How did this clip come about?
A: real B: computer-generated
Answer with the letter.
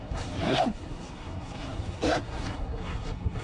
B